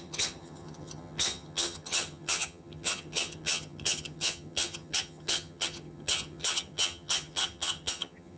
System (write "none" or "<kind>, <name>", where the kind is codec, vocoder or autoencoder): vocoder, HiFi-GAN